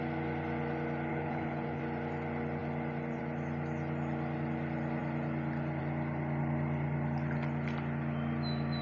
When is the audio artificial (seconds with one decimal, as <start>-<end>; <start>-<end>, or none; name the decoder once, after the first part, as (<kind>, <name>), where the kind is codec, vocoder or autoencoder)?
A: 1.1-1.8 (codec, HILCodec)